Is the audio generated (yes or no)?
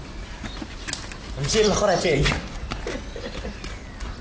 no